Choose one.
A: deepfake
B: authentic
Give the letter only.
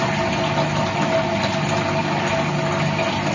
B